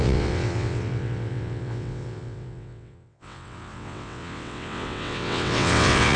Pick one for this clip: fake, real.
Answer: fake